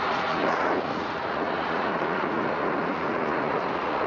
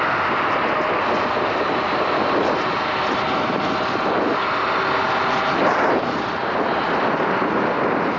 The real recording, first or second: second